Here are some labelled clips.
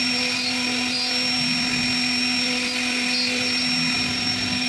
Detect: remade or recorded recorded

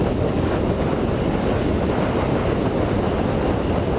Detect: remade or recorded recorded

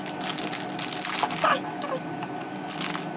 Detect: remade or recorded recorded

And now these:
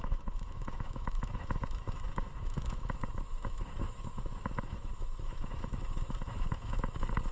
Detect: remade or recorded remade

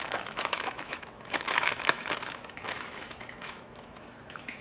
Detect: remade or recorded remade